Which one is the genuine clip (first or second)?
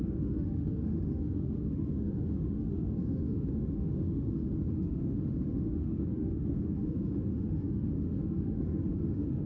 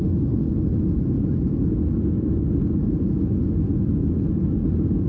second